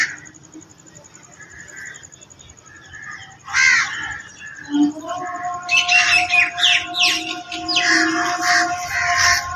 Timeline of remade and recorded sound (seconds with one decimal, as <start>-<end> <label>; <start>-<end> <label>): 0.0-9.6 recorded